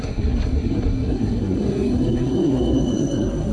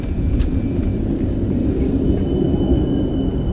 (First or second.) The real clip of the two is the second